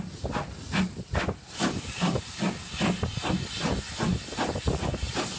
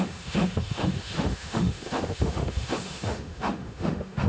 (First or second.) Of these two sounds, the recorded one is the first